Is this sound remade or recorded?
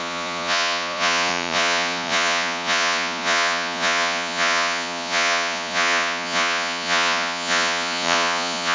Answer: remade